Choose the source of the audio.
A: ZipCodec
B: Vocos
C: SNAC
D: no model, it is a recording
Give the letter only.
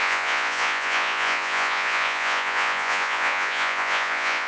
B